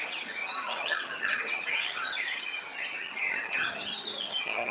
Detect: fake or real fake